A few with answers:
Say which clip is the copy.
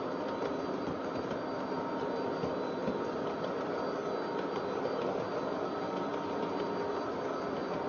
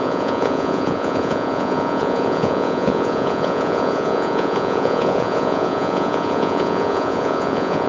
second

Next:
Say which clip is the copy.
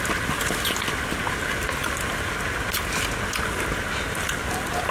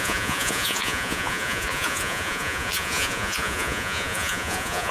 second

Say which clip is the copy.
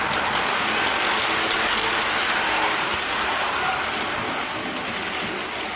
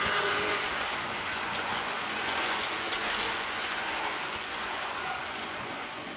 second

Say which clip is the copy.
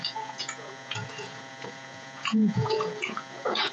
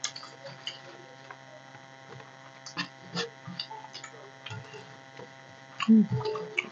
first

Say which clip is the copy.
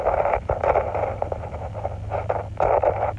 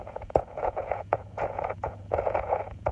second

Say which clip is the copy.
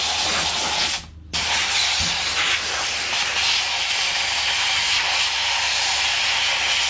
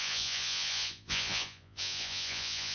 second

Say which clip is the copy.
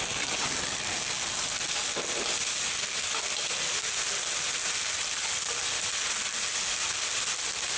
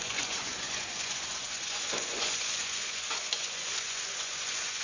second